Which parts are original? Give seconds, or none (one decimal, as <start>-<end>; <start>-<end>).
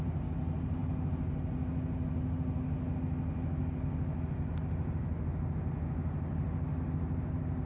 0.0-7.7